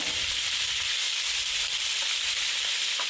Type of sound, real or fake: real